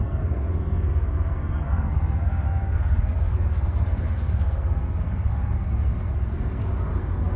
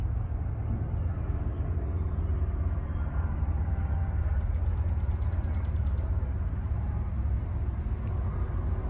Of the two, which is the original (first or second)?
second